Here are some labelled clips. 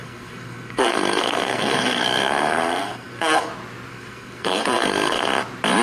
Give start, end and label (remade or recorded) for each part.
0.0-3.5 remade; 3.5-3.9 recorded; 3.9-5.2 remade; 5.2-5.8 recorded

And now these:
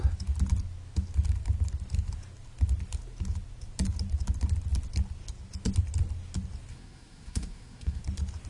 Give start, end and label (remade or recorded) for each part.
0.0-6.7 recorded; 6.7-8.0 remade; 8.0-8.5 recorded

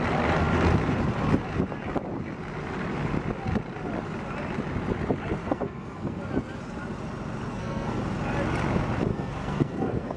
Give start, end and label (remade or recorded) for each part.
0.0-5.4 recorded; 5.4-6.2 remade; 6.2-7.5 recorded; 7.5-8.0 remade; 8.0-9.1 recorded; 9.1-10.2 remade

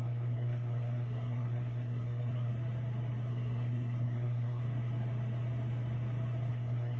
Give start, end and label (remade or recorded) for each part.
0.0-2.5 remade; 2.5-3.3 recorded; 3.3-4.6 remade; 4.6-6.5 recorded; 6.5-7.0 remade

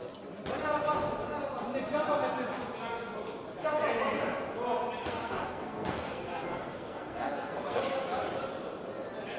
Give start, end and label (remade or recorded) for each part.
0.0-5.0 recorded; 5.0-7.8 remade; 7.8-9.4 recorded

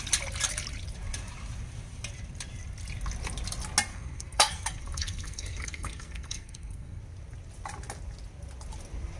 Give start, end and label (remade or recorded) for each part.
0.0-3.9 recorded; 3.9-7.0 remade; 7.0-9.2 recorded